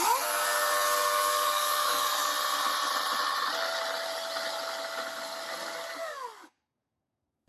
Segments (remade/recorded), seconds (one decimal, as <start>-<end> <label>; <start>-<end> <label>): 0.0-2.3 remade; 2.3-6.0 recorded; 6.0-7.5 remade